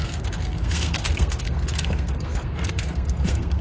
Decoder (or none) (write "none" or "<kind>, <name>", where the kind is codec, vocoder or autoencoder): codec, SNAC